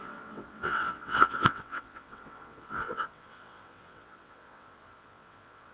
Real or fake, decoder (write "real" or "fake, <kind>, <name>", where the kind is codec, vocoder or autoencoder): fake, vocoder, WaveNeXt